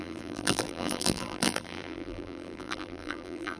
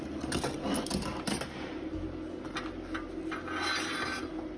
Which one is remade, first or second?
first